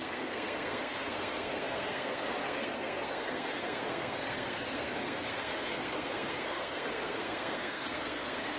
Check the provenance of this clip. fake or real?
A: fake